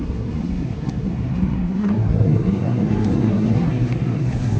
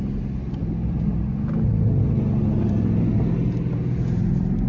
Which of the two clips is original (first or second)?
second